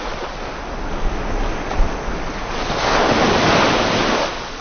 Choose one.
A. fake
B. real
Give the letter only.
B